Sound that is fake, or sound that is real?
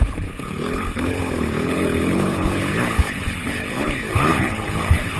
fake